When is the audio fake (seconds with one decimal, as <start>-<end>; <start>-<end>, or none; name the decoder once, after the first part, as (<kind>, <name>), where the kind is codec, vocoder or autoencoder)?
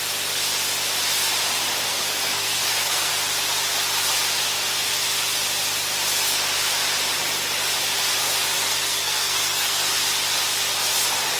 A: 1.9-3.1 (codec, SNAC); 8.6-9.9